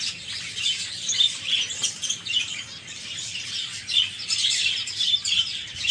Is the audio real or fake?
fake